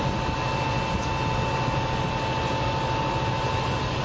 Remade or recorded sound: recorded